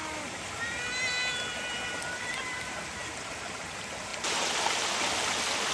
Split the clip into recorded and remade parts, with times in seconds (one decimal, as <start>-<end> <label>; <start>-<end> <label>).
0.0-5.7 recorded